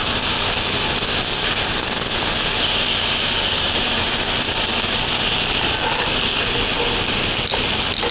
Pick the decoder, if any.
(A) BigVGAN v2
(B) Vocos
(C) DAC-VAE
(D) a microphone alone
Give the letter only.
D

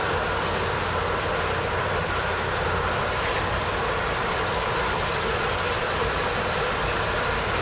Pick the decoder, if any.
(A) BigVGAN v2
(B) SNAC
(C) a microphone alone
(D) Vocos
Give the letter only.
A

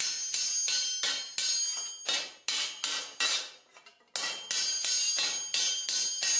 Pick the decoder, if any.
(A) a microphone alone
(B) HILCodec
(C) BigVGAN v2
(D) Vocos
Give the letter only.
A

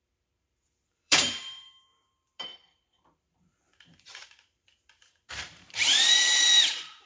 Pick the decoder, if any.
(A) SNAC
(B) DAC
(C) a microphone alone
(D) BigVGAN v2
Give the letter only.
D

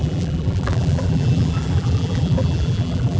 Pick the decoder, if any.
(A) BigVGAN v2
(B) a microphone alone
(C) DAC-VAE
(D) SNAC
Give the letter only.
A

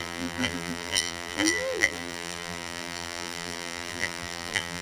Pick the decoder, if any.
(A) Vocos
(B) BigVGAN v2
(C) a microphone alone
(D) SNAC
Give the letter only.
B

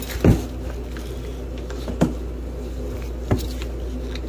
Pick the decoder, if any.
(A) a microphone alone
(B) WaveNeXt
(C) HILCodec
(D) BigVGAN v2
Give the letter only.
A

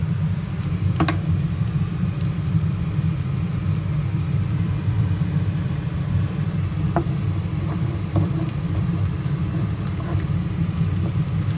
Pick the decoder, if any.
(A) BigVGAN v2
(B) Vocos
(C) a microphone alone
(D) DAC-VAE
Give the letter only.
A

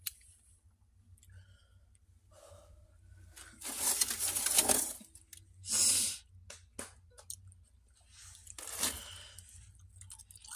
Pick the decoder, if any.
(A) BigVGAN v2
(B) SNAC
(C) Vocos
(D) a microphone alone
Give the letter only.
D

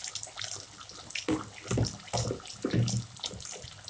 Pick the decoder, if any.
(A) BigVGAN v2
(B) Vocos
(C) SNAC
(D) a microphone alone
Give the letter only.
D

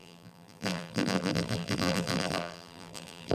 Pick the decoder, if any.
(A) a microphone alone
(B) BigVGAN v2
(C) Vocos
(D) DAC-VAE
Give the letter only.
B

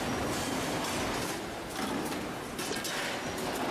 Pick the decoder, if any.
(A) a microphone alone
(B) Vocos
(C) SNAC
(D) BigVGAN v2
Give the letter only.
A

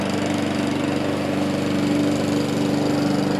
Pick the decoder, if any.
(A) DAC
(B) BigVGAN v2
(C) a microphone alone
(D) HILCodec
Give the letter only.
C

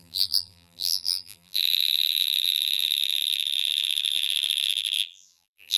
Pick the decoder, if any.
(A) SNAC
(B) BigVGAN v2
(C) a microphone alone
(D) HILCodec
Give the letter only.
B